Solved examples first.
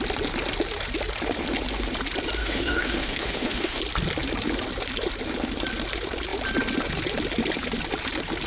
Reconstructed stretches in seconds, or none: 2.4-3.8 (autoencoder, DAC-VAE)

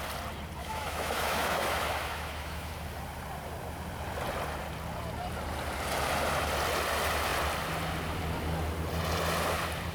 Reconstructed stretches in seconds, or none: 0.6-2.7 (autoencoder, DAC-VAE)

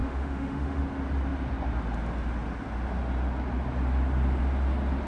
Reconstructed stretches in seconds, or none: 0.0-0.8 (autoencoder, DAC-VAE)

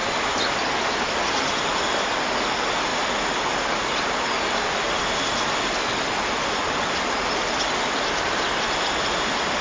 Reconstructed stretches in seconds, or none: none

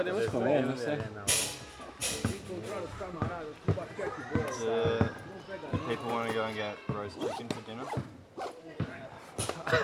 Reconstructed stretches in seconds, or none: none

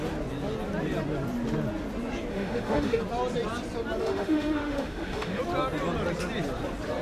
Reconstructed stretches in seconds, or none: 2.3-3.0 (autoencoder, DAC-VAE); 4.0-5.4